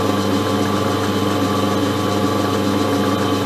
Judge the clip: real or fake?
real